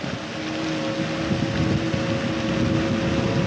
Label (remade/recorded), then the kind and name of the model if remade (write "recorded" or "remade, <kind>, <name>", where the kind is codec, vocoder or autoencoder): recorded